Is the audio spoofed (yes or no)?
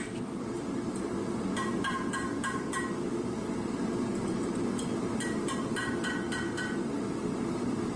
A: no